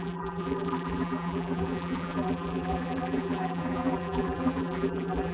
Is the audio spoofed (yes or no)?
yes